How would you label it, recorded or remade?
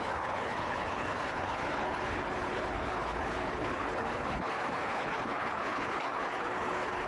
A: remade